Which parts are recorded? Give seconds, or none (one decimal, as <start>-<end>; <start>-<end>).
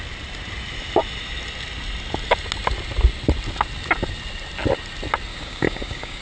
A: 0.0-5.3